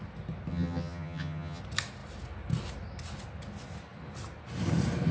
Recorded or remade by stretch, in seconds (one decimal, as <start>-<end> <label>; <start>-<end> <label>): 0.0-0.5 recorded; 0.5-1.6 remade; 1.6-5.1 recorded